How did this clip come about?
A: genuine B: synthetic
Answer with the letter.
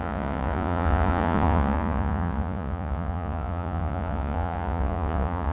B